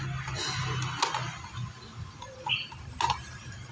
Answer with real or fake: real